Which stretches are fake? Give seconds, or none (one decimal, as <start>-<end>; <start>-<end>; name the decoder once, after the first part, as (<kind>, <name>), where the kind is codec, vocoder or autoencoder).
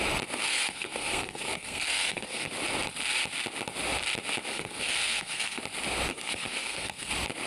0.4-2.5 (codec, SNAC); 4.5-5.6; 6.1-7.1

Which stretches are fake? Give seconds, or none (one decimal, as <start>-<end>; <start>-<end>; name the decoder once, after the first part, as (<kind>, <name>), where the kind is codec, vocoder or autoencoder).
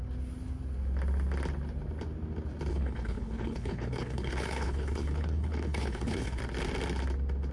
2.7-6.4 (codec, HILCodec)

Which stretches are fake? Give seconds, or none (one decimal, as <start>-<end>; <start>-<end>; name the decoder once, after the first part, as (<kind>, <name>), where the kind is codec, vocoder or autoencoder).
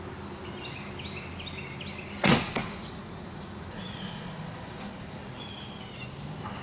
2.2-5.2 (vocoder, Vocos)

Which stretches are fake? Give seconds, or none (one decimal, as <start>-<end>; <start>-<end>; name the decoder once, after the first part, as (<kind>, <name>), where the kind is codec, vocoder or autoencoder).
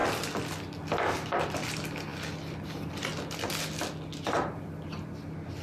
none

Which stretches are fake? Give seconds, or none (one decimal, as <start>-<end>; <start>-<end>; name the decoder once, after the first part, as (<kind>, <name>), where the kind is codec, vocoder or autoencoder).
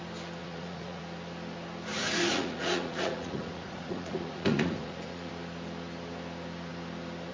0.4-1.0 (vocoder, Vocos); 1.9-5.3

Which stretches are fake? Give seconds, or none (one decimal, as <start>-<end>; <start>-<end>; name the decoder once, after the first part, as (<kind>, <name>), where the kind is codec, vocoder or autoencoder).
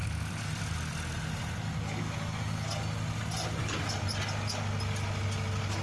0.0-0.6 (vocoder, BigVGAN v2)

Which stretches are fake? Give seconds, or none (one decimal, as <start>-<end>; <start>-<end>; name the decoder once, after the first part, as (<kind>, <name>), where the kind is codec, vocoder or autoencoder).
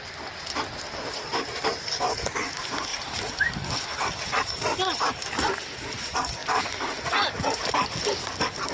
2.9-4.1 (vocoder, BigVGAN v2); 6.4-7.6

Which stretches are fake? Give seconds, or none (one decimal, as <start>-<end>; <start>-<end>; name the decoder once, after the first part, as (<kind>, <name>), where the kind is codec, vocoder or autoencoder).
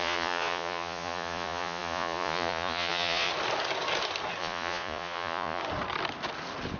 0.0-3.3 (vocoder, Vocos); 4.4-5.6